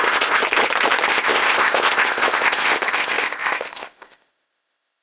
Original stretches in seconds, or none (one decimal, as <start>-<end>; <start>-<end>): 0.4-1.1